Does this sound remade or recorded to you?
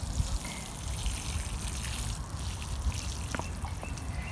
recorded